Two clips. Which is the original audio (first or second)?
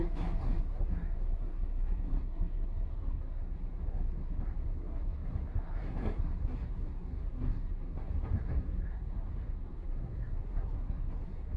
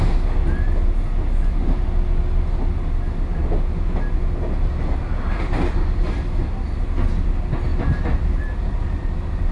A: second